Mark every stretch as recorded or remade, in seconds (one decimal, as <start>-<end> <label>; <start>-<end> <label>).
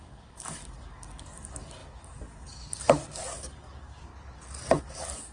0.0-4.1 remade; 4.1-4.8 recorded; 4.8-5.3 remade